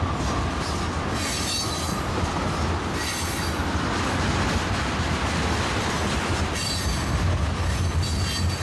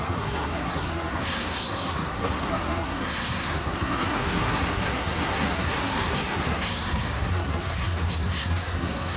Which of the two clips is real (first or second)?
first